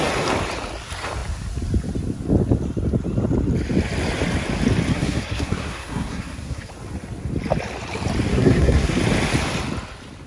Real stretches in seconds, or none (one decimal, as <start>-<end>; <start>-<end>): 0.0-4.9; 6.7-8.3; 9.0-10.3